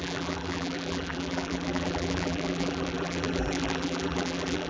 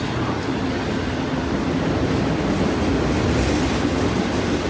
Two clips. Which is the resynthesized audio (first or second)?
first